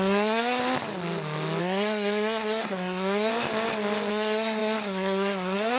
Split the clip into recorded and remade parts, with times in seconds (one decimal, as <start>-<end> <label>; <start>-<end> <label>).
0.0-0.6 remade; 0.6-1.6 recorded; 1.6-3.3 remade; 3.3-4.1 recorded; 4.1-5.8 remade